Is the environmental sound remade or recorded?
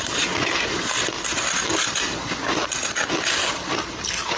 recorded